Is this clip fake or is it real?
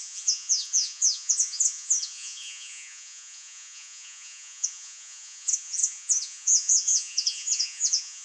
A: fake